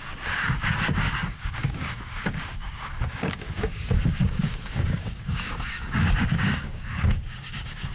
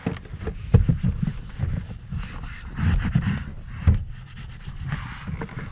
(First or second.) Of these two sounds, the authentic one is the second